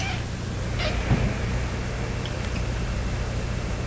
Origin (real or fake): real